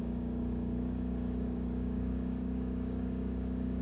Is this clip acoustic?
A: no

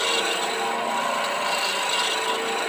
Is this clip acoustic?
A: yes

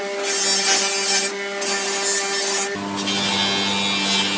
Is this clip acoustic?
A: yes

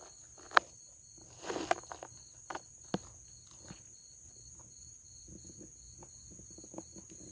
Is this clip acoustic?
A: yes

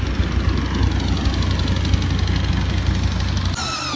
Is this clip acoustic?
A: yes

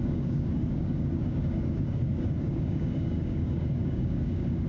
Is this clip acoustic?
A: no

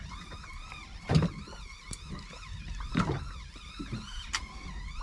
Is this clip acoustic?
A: yes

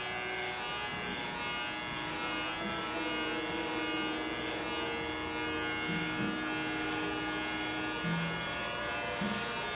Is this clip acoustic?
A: yes